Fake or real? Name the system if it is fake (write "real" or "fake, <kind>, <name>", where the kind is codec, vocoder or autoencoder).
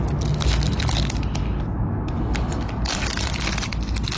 real